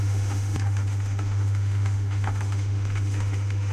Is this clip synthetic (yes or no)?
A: yes